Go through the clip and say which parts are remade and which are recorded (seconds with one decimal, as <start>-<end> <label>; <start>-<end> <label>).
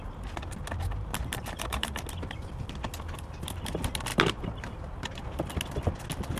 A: 0.0-1.1 recorded; 1.1-2.0 remade; 2.0-4.1 recorded; 4.1-5.4 remade; 5.4-6.4 recorded